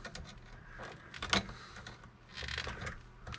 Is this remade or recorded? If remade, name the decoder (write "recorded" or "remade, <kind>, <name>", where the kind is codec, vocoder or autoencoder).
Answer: recorded